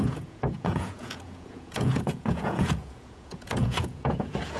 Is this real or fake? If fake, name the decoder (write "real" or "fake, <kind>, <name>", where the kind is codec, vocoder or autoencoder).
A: fake, vocoder, Vocos